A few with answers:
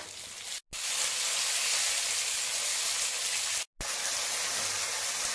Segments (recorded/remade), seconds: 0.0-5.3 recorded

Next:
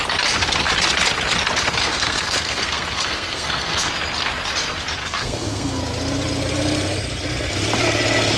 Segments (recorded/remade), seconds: 0.0-1.8 recorded; 1.8-3.9 remade; 3.9-5.0 recorded; 5.0-5.8 remade; 5.8-8.4 recorded

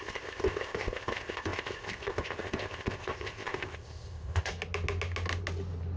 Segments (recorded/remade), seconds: 0.0-4.5 remade; 4.5-6.0 recorded

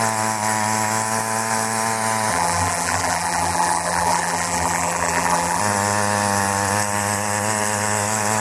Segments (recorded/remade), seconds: 0.0-2.3 recorded; 2.3-5.6 remade; 5.6-8.4 recorded

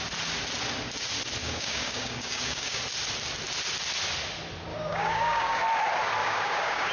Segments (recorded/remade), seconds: 0.0-1.4 recorded; 1.4-2.8 remade; 2.8-4.7 recorded; 4.7-5.6 remade; 5.6-6.2 recorded; 6.2-6.9 remade

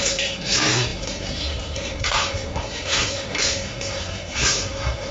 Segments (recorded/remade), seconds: 0.0-5.1 remade

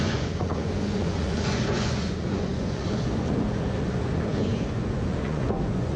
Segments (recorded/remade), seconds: 0.0-6.0 remade